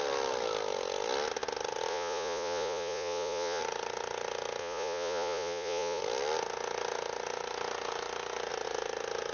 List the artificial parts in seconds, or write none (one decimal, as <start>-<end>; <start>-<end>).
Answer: 1.9-3.6; 4.6-6.0